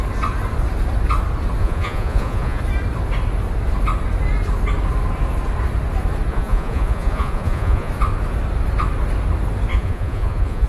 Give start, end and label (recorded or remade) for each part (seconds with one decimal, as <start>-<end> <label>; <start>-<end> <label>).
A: 0.0-1.6 recorded; 1.6-2.6 remade; 2.6-6.3 recorded; 6.3-7.9 remade; 7.9-9.7 recorded; 9.7-10.7 remade